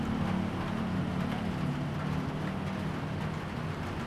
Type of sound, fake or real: real